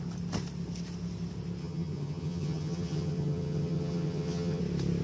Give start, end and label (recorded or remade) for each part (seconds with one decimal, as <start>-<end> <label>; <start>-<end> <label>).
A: 0.0-1.6 recorded; 1.6-4.6 remade; 4.6-5.0 recorded